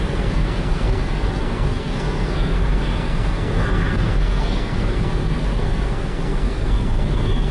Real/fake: fake